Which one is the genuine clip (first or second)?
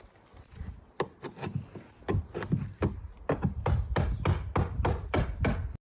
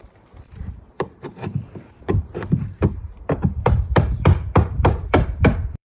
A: first